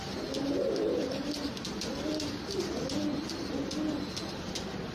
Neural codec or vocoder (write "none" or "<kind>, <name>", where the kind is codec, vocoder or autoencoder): none